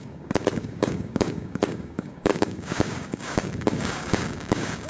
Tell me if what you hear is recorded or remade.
remade